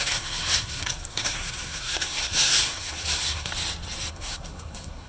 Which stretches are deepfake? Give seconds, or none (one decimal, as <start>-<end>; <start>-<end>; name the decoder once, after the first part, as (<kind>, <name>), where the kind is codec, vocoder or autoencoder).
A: 0.0-3.5 (codec, SNAC); 4.1-5.1